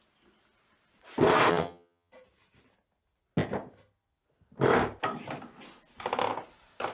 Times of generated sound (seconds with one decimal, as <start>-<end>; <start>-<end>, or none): 1.5-2.1